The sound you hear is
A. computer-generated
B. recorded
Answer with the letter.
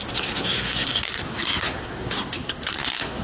A